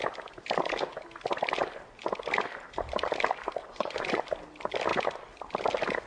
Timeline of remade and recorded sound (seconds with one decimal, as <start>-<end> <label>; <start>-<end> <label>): 0.0-3.6 recorded; 3.6-4.2 remade; 4.2-6.1 recorded